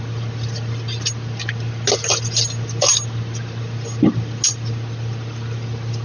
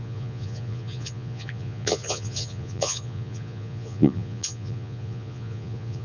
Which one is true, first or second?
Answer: first